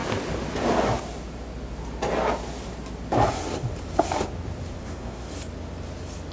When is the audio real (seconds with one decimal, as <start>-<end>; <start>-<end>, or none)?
0.0-4.8; 5.3-6.3